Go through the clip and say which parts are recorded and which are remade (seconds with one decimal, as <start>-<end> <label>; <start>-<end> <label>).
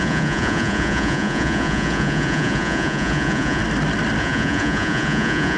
0.0-3.6 remade; 3.6-4.2 recorded; 4.2-5.6 remade